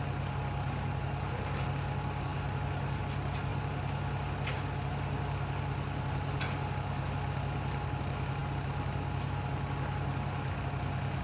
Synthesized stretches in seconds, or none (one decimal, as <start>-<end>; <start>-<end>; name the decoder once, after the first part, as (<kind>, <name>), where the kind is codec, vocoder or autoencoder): none